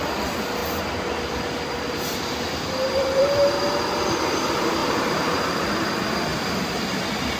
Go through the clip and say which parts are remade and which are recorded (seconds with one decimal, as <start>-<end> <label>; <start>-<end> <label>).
0.0-0.6 recorded; 0.6-3.5 remade; 3.5-4.8 recorded; 4.8-5.7 remade; 5.7-6.3 recorded; 6.3-6.9 remade; 6.9-7.4 recorded